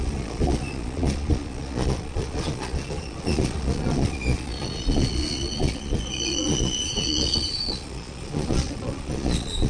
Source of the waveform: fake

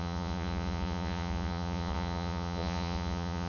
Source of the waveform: fake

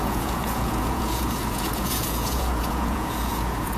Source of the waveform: fake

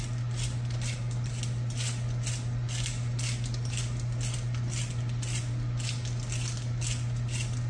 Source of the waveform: real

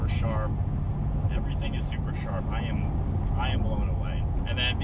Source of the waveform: real